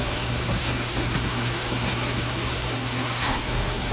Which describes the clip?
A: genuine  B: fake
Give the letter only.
B